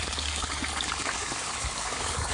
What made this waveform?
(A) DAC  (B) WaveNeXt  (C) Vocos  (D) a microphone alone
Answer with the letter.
A